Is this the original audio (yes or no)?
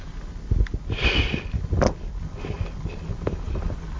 yes